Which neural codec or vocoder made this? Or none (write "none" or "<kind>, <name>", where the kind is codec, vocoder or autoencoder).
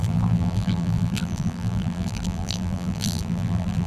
vocoder, BigVGAN v2